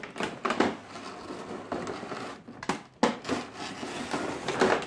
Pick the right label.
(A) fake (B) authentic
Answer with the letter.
B